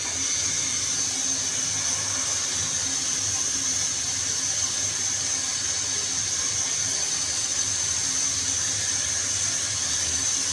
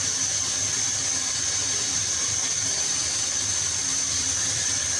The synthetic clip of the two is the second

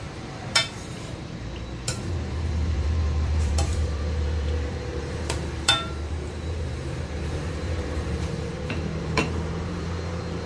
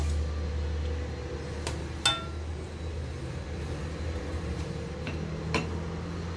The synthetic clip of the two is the first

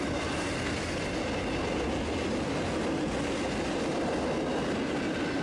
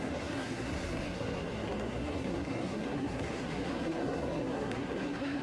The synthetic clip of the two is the second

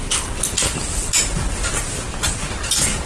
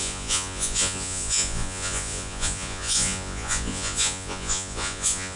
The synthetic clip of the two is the second